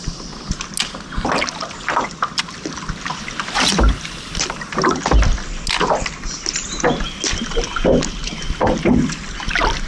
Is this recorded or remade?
recorded